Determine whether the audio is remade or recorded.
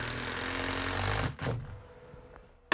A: recorded